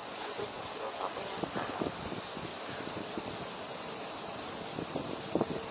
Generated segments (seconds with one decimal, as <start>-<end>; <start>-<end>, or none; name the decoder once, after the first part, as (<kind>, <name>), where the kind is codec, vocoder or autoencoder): 0.0-1.0 (vocoder, Vocos)